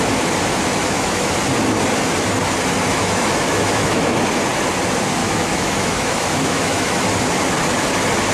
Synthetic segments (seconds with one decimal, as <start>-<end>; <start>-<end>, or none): 0.7-1.3; 2.9-4.2; 5.2-7.0